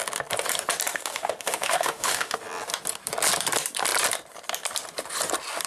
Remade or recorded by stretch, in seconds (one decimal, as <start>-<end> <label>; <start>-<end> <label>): 0.0-0.9 recorded; 0.9-2.4 remade; 2.4-5.7 recorded